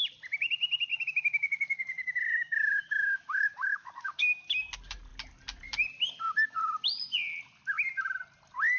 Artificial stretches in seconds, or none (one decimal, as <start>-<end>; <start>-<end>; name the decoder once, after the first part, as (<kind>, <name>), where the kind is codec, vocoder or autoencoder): 0.9-4.6 (autoencoder, DAC-VAE)

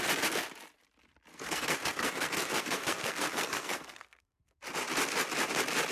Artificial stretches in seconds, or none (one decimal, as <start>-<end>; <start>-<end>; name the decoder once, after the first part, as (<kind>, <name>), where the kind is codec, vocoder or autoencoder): 1.3-4.6 (codec, SNAC)